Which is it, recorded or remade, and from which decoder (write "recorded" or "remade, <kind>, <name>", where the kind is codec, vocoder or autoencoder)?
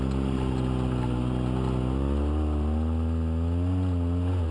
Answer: recorded